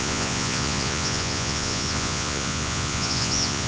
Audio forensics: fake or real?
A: fake